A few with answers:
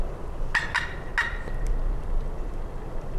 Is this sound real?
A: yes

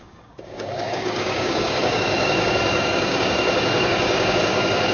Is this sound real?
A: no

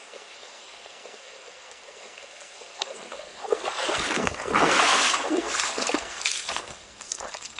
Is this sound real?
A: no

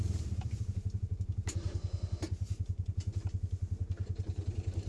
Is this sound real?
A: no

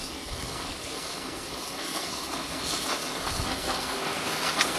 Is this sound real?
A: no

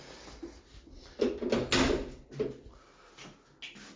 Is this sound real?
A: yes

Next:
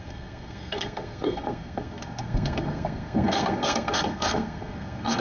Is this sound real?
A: no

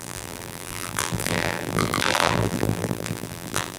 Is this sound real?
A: no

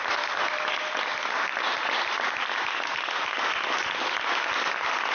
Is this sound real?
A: yes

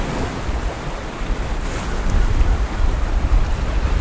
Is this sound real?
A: yes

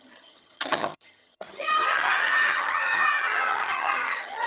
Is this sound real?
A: no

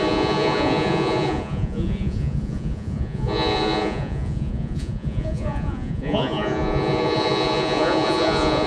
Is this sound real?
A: no